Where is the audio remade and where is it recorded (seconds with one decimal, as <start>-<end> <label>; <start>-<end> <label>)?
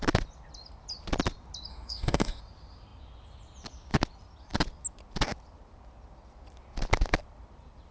0.0-1.7 recorded; 1.7-2.4 remade; 2.4-7.9 recorded